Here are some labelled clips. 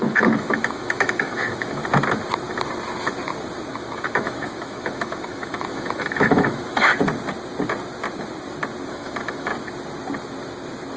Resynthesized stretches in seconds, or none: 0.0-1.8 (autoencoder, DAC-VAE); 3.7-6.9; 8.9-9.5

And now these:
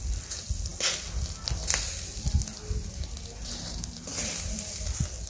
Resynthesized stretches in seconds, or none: none

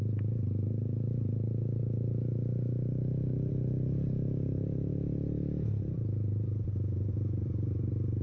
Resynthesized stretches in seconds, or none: 0.0-4.9 (vocoder, BigVGAN v2); 5.9-8.2

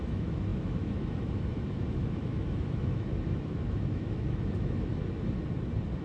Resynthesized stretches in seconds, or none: 0.0-5.0 (autoencoder, DAC-VAE)